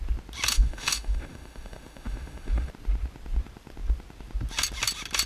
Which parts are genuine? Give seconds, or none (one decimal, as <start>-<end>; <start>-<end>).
0.0-0.5; 2.7-5.3